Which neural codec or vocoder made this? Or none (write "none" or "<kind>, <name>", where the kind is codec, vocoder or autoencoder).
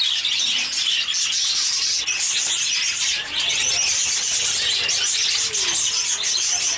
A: none